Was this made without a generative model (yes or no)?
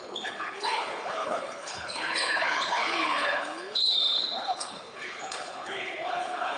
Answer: no